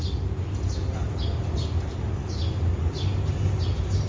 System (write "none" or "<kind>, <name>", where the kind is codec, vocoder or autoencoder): none